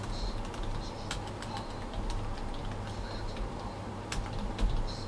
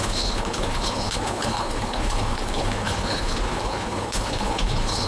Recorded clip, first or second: first